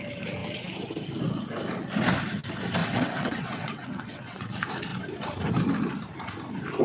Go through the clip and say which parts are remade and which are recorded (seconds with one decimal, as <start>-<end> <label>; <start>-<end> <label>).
0.0-2.8 recorded; 2.8-4.5 remade; 4.5-6.8 recorded